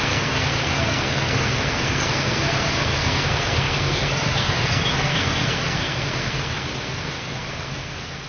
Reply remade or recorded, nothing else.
remade